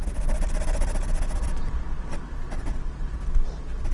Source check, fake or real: real